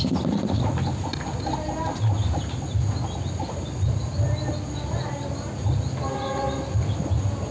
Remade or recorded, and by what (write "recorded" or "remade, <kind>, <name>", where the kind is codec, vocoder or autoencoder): recorded